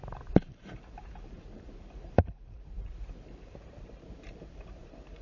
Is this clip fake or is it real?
fake